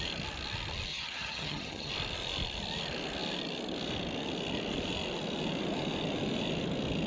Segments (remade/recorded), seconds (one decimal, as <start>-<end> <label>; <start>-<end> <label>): 0.0-0.9 recorded; 0.9-1.9 remade; 1.9-7.1 recorded